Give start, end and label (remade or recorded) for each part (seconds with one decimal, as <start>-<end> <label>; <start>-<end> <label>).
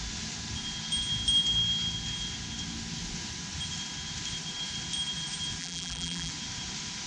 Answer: 0.0-5.6 recorded; 5.6-6.3 remade; 6.3-7.1 recorded